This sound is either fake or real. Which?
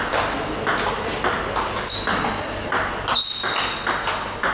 real